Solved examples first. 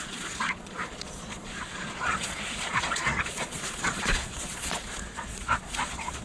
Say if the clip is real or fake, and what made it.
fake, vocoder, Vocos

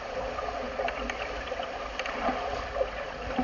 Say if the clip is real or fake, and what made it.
real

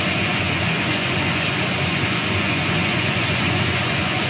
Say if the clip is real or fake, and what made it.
fake, vocoder, Vocos